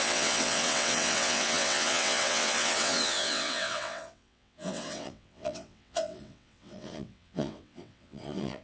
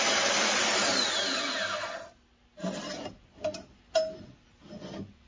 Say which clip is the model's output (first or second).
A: first